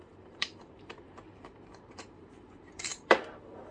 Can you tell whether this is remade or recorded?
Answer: remade